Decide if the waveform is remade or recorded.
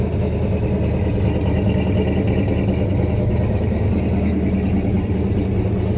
recorded